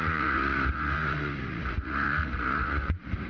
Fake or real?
fake